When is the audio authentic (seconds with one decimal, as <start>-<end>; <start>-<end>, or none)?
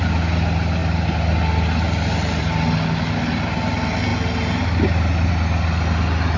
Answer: 0.0-6.4